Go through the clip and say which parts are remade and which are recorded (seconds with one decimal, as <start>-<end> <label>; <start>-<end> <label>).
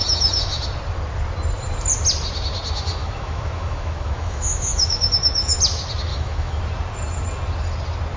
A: 0.0-0.6 remade; 0.6-3.0 recorded; 3.0-5.6 remade; 5.6-6.1 recorded; 6.1-6.6 remade; 6.6-8.2 recorded